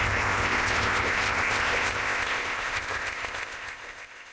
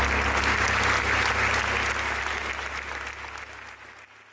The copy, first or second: first